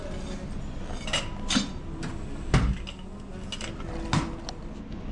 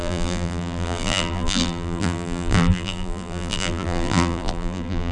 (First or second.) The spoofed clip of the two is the second